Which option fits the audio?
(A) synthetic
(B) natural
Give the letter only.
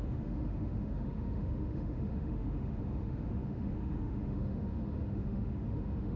A